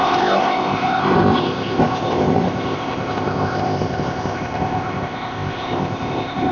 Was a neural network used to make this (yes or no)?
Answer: yes